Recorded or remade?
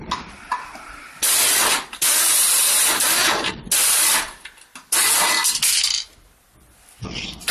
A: recorded